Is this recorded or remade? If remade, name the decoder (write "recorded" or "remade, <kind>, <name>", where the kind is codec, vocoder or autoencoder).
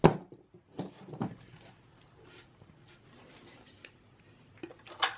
recorded